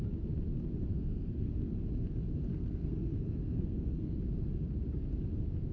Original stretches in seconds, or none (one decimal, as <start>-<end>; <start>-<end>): 0.0-0.9; 1.7-2.5; 4.2-5.7